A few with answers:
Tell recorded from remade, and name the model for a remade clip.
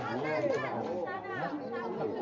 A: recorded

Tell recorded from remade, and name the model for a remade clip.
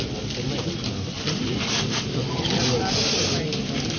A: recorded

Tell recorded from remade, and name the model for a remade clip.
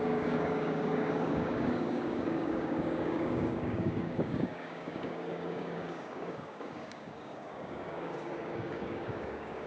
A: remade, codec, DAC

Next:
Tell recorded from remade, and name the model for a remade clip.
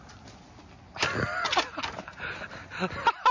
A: recorded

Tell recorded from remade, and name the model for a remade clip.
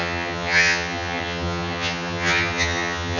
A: remade, vocoder, HiFi-GAN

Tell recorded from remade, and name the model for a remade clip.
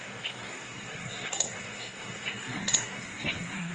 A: remade, codec, SNAC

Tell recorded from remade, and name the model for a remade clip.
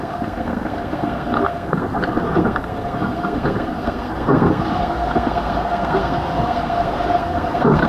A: remade, codec, SNAC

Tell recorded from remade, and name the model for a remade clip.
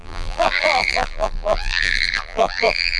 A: remade, vocoder, BigVGAN v2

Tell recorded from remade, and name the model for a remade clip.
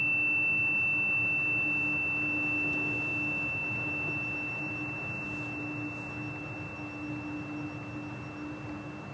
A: recorded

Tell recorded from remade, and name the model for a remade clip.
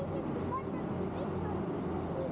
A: recorded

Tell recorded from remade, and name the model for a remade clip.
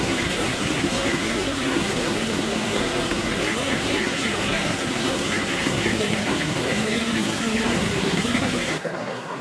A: remade, codec, SNAC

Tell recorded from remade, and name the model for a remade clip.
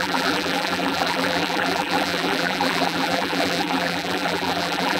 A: remade, vocoder, BigVGAN v2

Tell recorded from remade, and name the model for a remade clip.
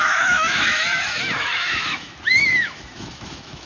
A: remade, autoencoder, DAC-VAE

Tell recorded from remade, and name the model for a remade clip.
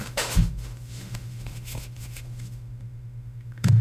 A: remade, autoencoder, DAC-VAE